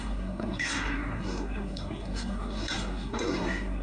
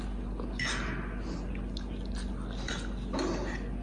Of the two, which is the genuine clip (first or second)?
second